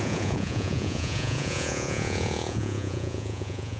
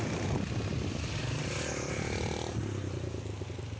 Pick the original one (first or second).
second